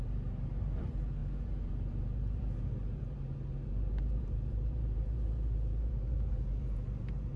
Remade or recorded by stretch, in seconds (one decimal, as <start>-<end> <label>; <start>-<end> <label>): 0.0-7.4 remade